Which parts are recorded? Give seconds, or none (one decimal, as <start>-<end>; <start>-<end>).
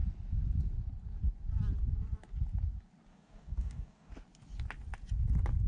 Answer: 0.0-3.1; 4.1-5.7